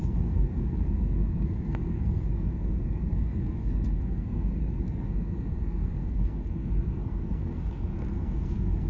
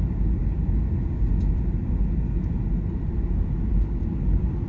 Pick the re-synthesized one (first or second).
first